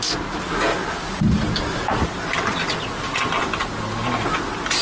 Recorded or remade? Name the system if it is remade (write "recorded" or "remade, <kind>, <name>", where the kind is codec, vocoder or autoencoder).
recorded